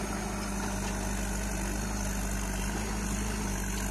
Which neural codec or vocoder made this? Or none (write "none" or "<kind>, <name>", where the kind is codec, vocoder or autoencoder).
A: none